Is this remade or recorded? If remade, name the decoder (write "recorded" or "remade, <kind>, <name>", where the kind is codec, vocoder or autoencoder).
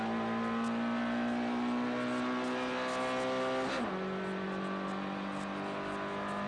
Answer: recorded